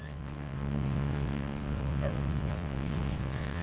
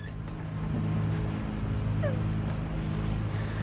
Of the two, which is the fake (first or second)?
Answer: first